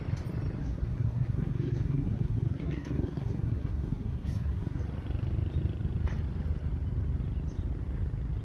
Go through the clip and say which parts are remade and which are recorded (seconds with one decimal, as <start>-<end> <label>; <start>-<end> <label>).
0.0-0.6 recorded; 0.6-4.8 remade; 4.8-8.4 recorded